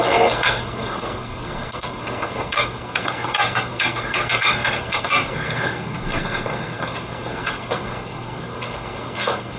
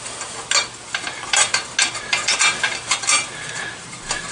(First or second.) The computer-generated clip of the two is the first